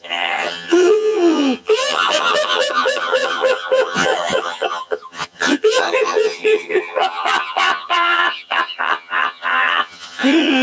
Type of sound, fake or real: fake